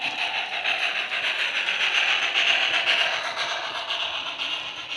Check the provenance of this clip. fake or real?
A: real